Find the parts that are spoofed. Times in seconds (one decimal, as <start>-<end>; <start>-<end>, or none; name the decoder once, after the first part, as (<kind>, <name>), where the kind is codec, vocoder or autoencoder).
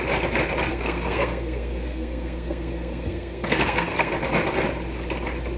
0.7-4.1 (codec, SNAC)